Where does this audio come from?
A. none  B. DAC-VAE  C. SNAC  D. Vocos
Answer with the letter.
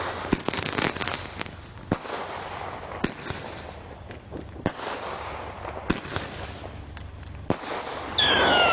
A